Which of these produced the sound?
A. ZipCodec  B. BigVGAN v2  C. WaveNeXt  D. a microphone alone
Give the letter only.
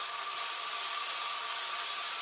D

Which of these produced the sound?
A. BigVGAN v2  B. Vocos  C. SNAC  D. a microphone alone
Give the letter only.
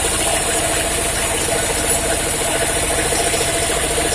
D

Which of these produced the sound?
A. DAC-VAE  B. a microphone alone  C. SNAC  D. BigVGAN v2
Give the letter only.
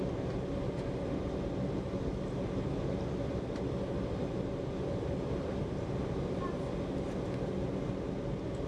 B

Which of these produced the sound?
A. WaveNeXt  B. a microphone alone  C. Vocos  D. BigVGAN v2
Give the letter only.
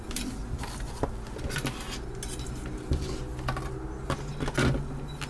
B